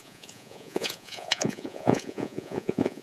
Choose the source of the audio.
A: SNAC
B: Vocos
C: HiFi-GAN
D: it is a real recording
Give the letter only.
B